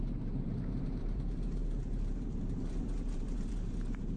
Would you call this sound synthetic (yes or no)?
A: yes